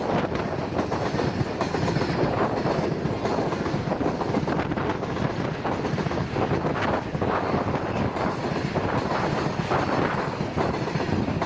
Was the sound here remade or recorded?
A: recorded